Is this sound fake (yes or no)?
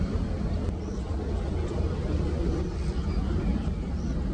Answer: no